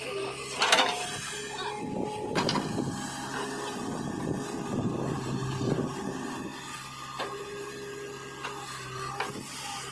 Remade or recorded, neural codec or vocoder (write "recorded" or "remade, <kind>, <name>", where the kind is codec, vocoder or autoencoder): recorded